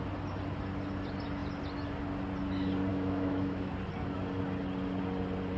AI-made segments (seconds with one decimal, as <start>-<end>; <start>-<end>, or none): 2.9-3.7